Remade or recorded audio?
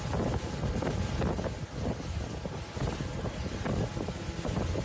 recorded